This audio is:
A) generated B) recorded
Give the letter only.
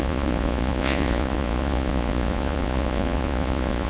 A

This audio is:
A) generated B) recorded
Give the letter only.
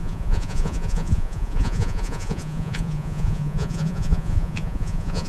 A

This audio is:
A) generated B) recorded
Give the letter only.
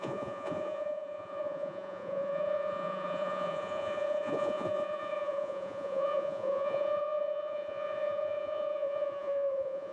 A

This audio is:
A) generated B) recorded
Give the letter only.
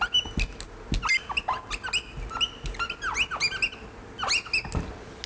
B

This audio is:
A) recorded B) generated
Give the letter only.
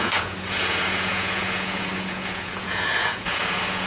B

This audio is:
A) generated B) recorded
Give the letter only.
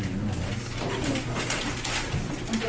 B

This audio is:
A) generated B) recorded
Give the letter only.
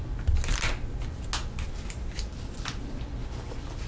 B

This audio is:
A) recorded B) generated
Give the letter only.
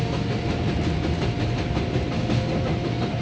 A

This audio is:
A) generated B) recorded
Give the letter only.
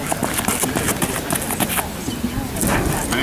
B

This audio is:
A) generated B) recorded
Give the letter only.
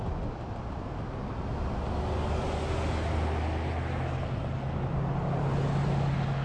B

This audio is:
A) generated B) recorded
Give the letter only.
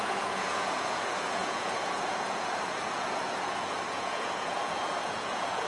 A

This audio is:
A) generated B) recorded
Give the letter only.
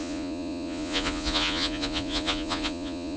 A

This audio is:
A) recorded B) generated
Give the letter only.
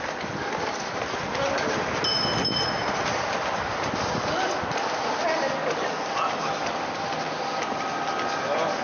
A